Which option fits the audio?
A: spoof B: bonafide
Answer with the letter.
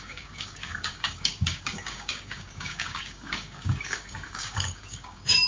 A